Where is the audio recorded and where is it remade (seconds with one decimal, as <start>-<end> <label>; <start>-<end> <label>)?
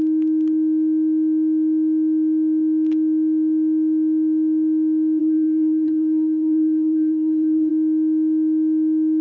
0.0-5.2 recorded; 5.2-7.7 remade; 7.7-9.2 recorded